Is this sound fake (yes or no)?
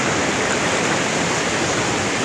no